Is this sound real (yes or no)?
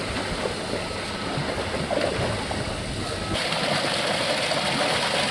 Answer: yes